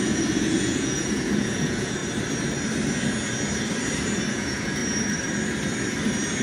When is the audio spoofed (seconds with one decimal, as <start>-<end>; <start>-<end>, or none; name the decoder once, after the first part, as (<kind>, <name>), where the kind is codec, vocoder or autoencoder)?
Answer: 0.0-2.0 (vocoder, Vocos); 4.3-4.8